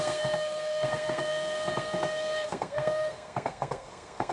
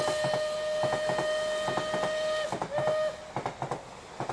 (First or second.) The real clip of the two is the second